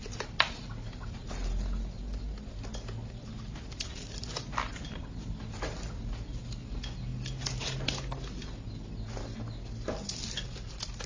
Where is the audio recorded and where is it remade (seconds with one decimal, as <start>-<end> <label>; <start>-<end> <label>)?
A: 0.0-11.1 recorded